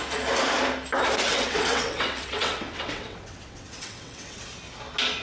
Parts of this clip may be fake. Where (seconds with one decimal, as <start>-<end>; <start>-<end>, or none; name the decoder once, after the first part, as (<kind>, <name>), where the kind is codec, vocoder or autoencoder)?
1.3-4.4 (vocoder, WaveNeXt)